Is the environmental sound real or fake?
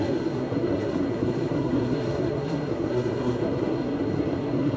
fake